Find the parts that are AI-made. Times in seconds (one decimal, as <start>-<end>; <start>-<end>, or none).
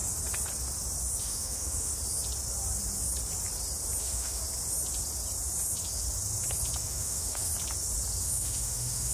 1.2-1.9; 4.0-4.4; 6.8-7.5; 8.2-9.1